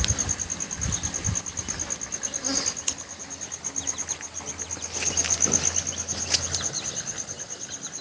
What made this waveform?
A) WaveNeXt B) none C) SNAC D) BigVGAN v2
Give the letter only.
B